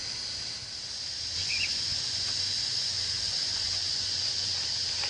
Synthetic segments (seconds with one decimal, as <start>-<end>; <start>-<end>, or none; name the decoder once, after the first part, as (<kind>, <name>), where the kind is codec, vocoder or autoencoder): 1.4-4.5 (vocoder, Vocos)